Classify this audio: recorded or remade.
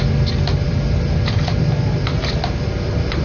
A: recorded